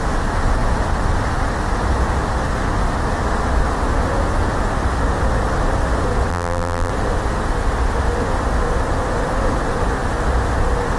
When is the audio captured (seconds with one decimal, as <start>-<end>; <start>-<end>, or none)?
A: 0.0-6.3; 6.9-11.0